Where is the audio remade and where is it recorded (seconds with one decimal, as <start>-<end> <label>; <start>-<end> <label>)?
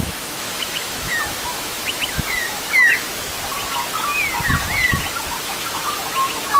0.0-3.3 remade; 3.3-5.4 recorded; 5.4-6.6 remade